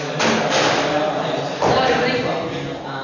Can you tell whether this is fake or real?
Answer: real